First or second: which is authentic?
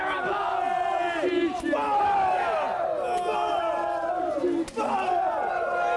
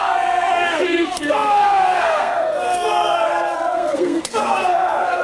first